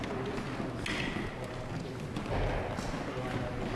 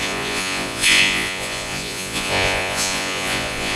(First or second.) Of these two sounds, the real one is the first